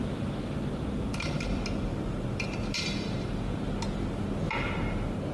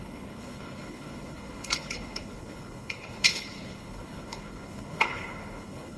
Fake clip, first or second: second